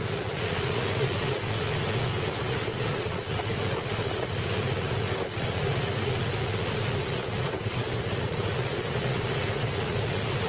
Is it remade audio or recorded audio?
remade